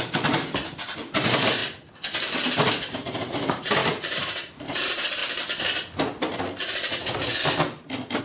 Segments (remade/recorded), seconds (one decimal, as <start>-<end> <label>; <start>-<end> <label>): 0.0-1.6 remade; 1.6-2.7 recorded; 2.7-5.2 remade; 5.2-8.2 recorded